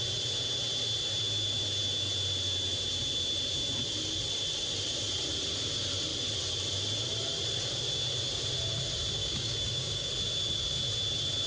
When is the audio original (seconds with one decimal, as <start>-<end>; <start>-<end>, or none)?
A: 0.0-9.2; 10.1-11.5